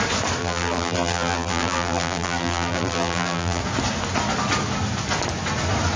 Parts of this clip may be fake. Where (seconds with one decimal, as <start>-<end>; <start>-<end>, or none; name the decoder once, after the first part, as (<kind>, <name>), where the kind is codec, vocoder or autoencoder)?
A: 0.4-3.6 (vocoder, BigVGAN v2)